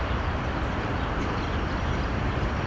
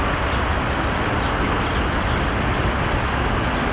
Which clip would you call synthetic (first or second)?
first